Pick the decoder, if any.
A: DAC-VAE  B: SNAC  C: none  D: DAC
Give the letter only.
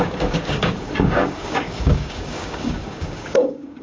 D